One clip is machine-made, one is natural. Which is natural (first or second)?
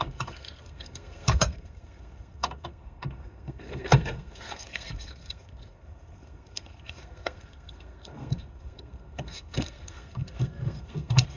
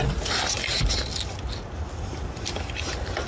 second